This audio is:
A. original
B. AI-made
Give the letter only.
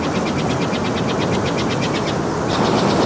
A